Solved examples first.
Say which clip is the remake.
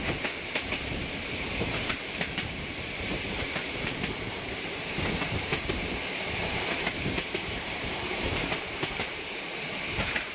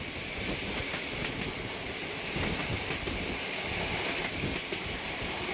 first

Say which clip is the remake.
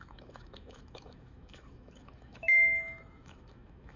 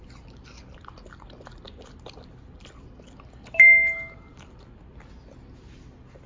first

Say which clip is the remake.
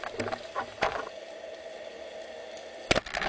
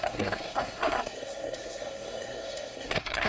second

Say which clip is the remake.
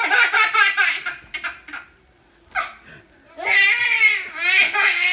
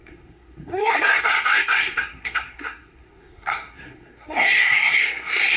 second